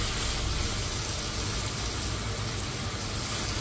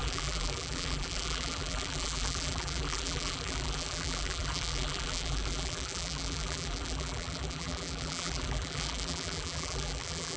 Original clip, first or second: first